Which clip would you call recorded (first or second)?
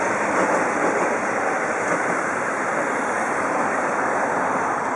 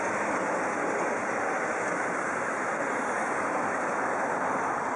second